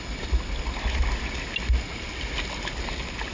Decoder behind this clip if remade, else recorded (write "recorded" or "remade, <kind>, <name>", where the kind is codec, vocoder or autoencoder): recorded